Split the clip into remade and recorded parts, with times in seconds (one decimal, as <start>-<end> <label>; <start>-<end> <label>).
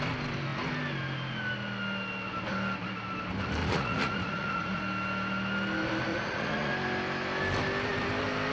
0.0-3.6 recorded; 3.6-4.8 remade; 4.8-6.1 recorded; 6.1-6.7 remade; 6.7-8.5 recorded